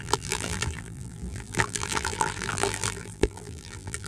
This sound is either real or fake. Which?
fake